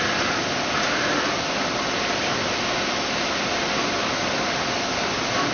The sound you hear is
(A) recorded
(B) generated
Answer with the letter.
A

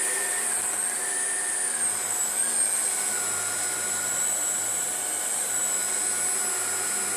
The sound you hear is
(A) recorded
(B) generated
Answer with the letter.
A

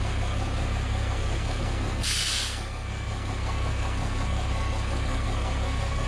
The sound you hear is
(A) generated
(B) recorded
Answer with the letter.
A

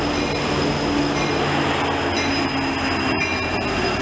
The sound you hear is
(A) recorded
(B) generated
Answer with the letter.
A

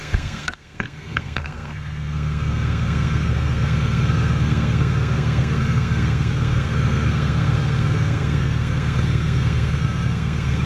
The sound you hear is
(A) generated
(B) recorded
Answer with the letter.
A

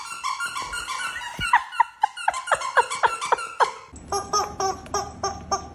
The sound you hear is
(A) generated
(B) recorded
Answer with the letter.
B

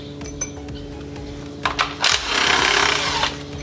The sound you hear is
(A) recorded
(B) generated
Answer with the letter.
A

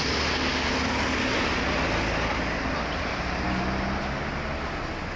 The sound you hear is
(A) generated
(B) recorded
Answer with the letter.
B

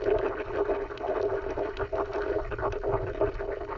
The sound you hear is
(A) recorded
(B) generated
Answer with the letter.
A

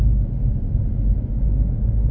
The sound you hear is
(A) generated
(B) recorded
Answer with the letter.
B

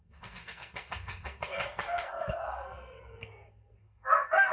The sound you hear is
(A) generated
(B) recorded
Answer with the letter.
A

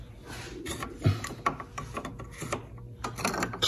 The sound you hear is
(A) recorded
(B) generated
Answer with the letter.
A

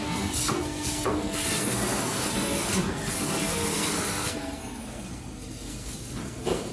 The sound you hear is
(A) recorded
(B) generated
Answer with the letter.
B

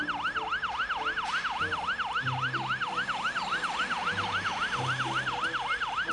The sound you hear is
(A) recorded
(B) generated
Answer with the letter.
A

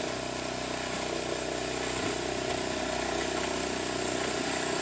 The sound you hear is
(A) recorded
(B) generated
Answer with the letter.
A